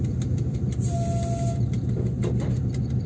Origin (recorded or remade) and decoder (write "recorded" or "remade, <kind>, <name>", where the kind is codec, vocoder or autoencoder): recorded